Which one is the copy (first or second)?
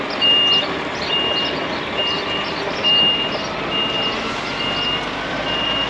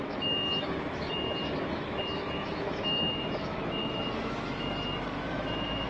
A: second